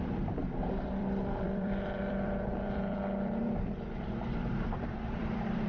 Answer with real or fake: fake